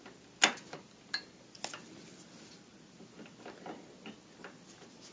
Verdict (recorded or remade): recorded